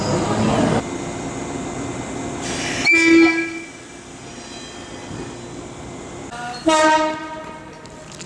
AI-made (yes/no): no